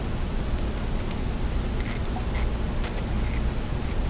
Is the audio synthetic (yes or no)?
no